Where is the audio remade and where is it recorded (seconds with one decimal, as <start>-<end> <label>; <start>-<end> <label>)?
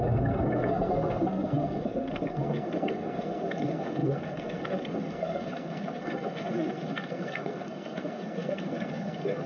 0.0-9.5 remade